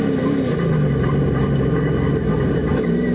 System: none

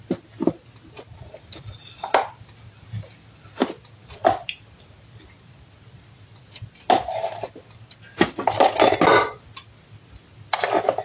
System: none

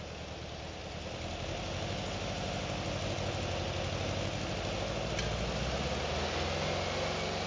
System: none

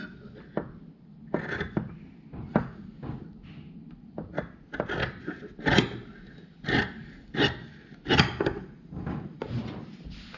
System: none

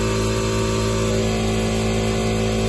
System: none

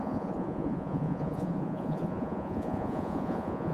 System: vocoder, Vocos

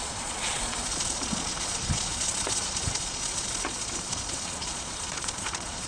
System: vocoder, Vocos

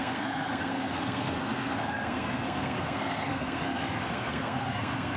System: codec, SNAC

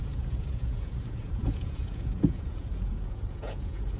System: vocoder, Vocos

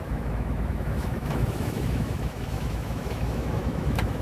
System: autoencoder, DAC-VAE